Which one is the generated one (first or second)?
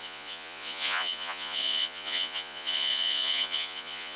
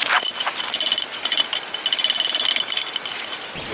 first